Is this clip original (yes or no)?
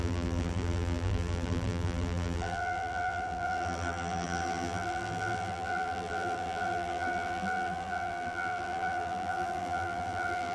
no